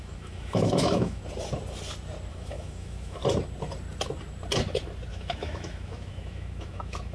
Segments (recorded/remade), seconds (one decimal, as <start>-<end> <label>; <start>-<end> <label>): 0.0-1.2 remade; 1.2-2.3 recorded; 2.3-3.2 remade; 3.2-5.1 recorded; 5.1-7.1 remade